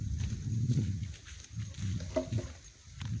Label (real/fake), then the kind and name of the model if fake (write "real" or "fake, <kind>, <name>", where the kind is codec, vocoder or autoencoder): real